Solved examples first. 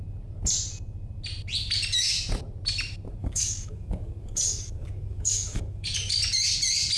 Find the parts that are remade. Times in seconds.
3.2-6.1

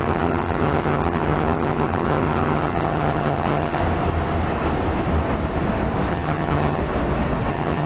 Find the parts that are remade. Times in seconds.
0.0-3.8; 6.1-6.8; 7.5-7.9

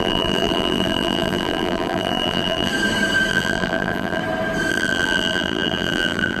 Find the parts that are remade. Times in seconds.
0.0-2.7; 3.3-4.2; 4.7-6.4

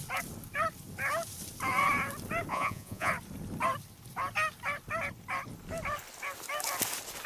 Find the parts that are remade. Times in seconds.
2.5-3.1